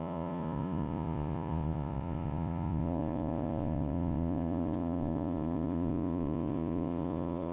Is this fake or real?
fake